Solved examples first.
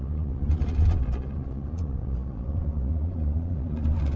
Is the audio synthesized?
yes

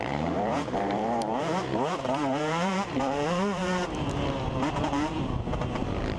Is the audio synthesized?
yes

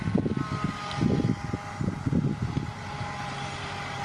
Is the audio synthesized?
no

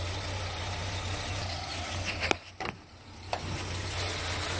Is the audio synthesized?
no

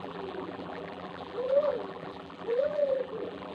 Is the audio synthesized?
yes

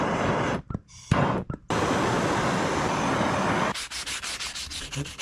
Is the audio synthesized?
no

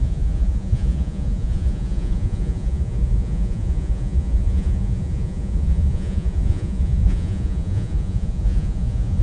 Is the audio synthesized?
yes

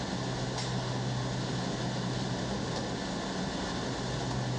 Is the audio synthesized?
no